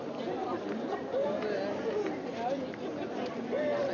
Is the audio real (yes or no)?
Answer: yes